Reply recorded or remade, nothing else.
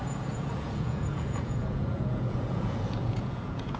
remade